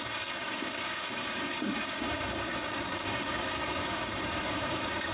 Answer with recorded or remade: remade